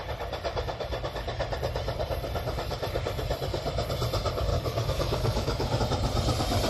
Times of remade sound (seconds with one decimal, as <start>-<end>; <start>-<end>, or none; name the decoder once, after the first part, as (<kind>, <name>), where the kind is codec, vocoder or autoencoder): 4.5-5.8 (codec, DAC)

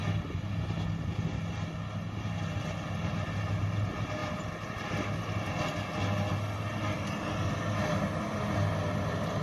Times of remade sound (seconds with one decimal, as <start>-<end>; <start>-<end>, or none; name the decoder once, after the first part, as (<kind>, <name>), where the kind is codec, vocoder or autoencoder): none

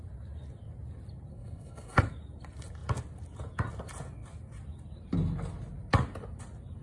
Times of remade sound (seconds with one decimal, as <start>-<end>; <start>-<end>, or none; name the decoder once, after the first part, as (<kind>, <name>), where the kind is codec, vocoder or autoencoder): 1.3-2.0 (codec, SNAC)

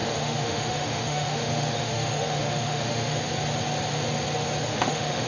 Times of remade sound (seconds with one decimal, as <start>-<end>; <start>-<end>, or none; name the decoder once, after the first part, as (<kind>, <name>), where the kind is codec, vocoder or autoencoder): 0.0-3.2 (autoencoder, DAC-VAE); 4.7-5.3

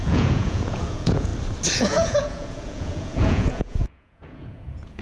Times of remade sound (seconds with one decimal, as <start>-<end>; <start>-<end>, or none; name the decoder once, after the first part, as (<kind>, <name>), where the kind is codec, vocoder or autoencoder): 0.0-1.3 (vocoder, Vocos); 1.8-5.0

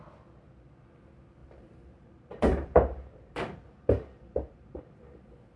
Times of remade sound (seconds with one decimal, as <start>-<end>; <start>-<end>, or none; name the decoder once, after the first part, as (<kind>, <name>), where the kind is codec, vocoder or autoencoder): 1.4-4.8 (vocoder, BigVGAN v2)

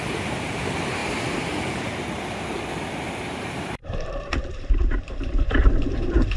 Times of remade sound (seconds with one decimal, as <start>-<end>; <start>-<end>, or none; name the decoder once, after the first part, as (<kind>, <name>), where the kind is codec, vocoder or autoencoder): 0.0-1.0 (vocoder, BigVGAN v2); 3.1-6.4